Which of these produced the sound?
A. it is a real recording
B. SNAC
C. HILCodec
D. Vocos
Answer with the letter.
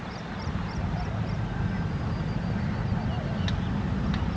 A